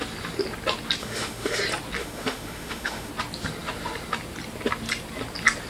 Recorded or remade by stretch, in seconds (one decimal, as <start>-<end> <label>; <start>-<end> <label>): 0.0-1.0 recorded; 1.0-1.6 remade; 1.6-2.0 recorded; 2.0-3.1 remade; 3.1-5.7 recorded